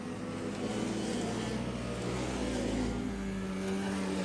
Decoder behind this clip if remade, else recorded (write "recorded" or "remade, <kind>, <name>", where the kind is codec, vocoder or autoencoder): recorded